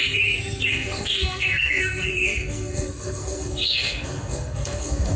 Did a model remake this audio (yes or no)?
yes